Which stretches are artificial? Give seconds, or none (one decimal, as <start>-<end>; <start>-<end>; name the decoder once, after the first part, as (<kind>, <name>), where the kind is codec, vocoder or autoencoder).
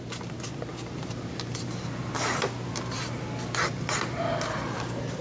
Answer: none